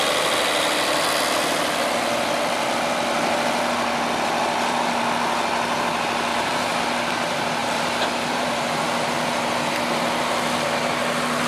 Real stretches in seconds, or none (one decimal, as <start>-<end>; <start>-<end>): 0.0-6.3; 6.8-7.6; 8.8-11.5

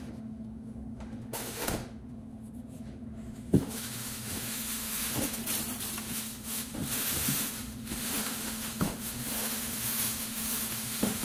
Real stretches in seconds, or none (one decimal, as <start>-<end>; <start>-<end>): 5.4-6.0

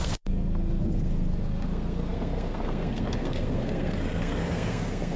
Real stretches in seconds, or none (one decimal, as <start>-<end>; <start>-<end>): none